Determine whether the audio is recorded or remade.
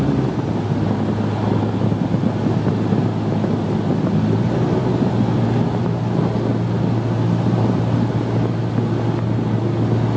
recorded